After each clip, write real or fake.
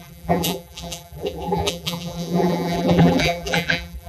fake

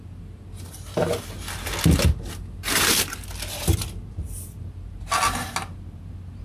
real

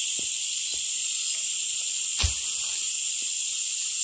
real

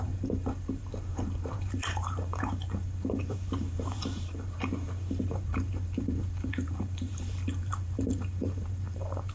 fake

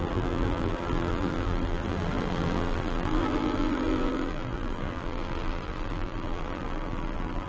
fake